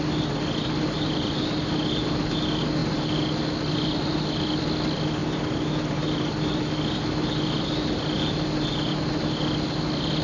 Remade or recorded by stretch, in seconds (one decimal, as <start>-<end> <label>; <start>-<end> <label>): 0.0-10.2 recorded